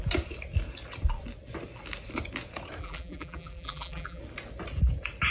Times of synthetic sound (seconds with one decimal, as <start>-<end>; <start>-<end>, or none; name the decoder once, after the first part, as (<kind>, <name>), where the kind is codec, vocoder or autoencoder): 2.8-4.2 (vocoder, BigVGAN v2)